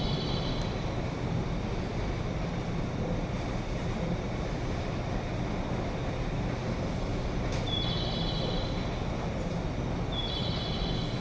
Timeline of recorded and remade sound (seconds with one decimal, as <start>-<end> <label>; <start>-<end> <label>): 0.0-11.2 recorded